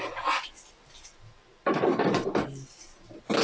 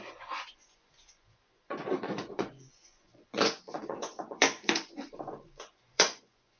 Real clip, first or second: first